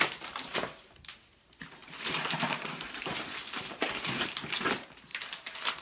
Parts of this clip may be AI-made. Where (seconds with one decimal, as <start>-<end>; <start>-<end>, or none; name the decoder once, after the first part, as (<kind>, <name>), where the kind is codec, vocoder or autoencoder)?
0.0-5.8 (vocoder, BigVGAN v2)